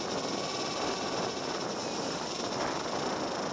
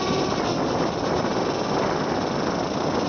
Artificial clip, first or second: second